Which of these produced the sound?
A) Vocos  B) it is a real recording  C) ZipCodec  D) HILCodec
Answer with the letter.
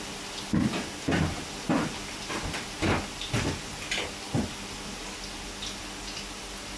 B